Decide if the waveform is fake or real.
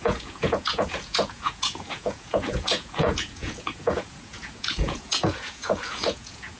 fake